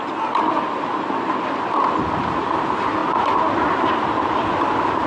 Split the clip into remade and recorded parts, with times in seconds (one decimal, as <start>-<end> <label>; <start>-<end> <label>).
0.0-5.1 recorded